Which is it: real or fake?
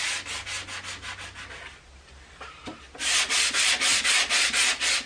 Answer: real